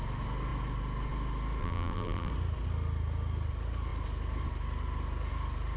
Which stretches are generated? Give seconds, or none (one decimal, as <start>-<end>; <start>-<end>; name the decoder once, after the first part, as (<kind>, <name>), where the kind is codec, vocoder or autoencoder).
1.6-2.3 (vocoder, BigVGAN v2)